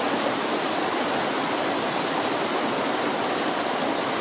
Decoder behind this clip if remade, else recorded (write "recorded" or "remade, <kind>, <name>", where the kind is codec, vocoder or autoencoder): recorded